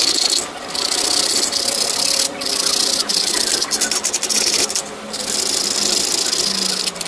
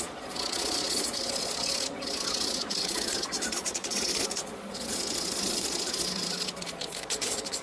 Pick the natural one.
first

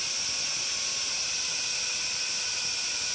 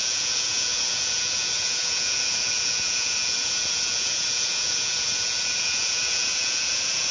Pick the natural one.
first